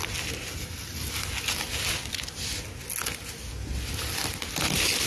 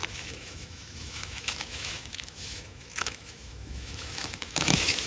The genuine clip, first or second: first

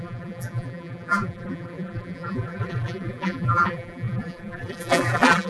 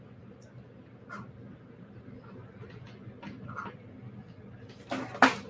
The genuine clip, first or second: second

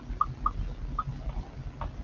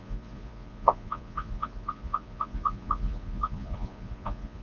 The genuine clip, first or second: first